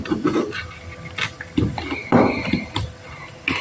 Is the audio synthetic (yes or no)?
no